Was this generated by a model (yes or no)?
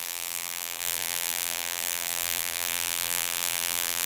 yes